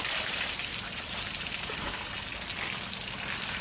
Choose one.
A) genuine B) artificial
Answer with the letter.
A